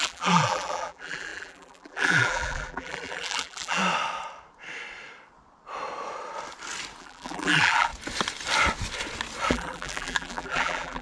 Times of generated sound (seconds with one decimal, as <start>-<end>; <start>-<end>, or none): 0.0-3.8; 7.0-7.9; 9.5-11.0